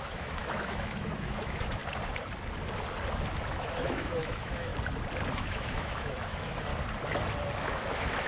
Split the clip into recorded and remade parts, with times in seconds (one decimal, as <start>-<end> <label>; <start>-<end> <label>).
0.0-1.8 remade; 1.8-3.5 recorded; 3.5-4.7 remade; 4.7-5.3 recorded; 5.3-6.7 remade; 6.7-7.7 recorded; 7.7-8.3 remade

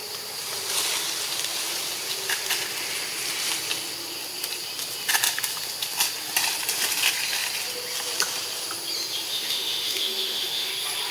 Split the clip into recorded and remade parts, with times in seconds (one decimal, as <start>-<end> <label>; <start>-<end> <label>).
0.0-9.3 recorded; 9.3-10.7 remade; 10.7-11.1 recorded

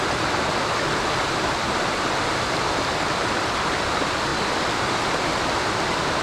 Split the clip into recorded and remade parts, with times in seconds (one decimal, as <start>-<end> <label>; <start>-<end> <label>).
0.0-6.2 recorded

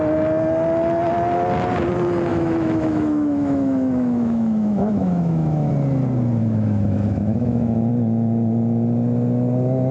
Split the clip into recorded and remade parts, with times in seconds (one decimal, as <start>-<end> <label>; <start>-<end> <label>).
0.0-2.3 recorded; 2.3-5.7 remade; 5.7-6.4 recorded; 6.4-7.9 remade; 7.9-9.9 recorded